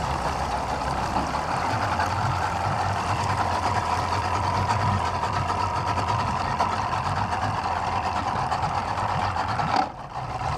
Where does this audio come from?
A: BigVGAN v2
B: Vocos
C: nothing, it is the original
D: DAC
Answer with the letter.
C